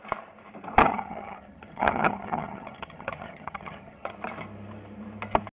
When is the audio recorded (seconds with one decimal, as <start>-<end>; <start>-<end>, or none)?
0.0-0.8; 4.1-5.5